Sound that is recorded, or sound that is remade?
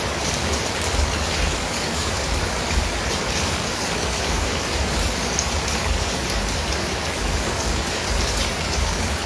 remade